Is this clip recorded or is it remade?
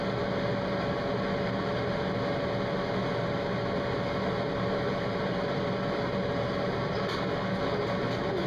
recorded